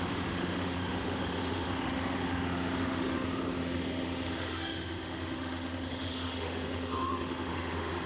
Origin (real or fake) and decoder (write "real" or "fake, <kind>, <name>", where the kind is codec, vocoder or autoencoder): fake, autoencoder, DAC-VAE